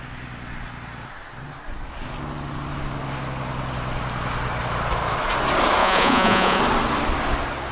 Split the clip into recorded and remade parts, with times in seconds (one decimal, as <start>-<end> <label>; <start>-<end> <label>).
0.0-5.8 recorded; 5.8-6.6 remade; 6.6-7.7 recorded